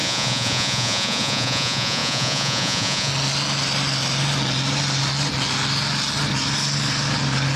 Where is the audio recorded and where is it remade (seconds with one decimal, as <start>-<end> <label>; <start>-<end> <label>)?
0.0-3.1 remade; 3.1-7.6 recorded